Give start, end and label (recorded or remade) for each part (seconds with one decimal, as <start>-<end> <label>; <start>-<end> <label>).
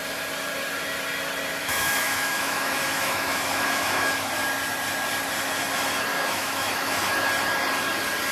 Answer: 0.0-1.6 recorded; 1.6-4.3 remade; 4.3-6.1 recorded; 6.1-7.0 remade; 7.0-8.3 recorded